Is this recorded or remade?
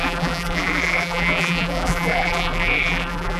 remade